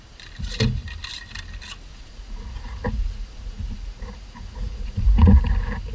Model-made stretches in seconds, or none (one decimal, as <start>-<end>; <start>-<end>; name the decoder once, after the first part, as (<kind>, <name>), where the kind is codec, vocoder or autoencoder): 1.9-5.4 (vocoder, Vocos)